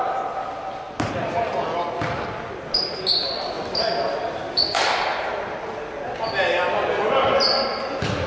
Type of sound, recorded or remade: recorded